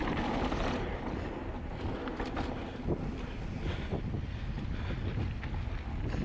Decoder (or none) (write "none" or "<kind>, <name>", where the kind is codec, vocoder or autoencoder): none